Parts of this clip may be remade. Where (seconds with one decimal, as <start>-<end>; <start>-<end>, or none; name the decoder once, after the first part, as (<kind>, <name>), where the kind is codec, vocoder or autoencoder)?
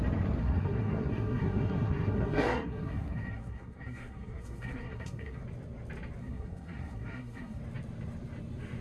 0.4-5.4 (codec, SNAC); 6.2-7.6